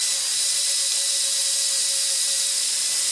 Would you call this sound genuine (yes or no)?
yes